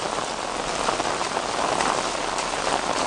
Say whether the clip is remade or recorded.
recorded